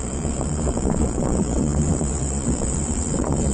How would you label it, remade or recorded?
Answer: remade